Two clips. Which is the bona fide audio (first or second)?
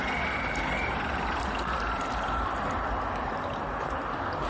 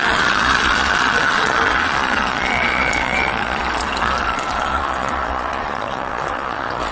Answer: first